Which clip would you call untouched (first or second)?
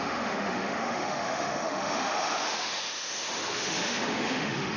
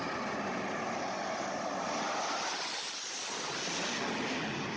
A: second